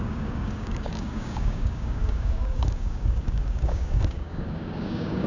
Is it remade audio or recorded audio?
remade